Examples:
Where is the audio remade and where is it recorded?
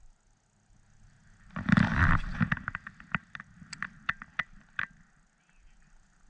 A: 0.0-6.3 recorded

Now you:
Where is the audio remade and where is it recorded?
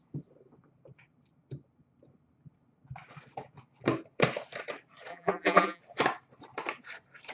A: 0.0-5.1 recorded; 5.1-5.8 remade; 5.8-7.3 recorded